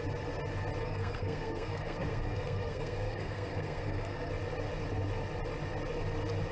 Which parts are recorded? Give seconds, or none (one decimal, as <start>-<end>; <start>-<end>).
0.0-0.8; 4.3-6.5